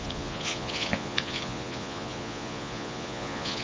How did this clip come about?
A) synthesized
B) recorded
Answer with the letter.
A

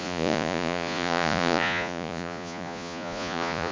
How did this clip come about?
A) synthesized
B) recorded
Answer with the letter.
A